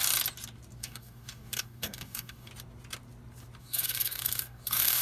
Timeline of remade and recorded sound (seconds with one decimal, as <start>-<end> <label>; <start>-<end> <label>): 0.0-0.8 recorded; 0.8-2.5 remade; 2.5-3.6 recorded; 3.6-5.0 remade